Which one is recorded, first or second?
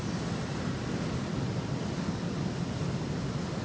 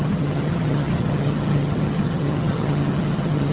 first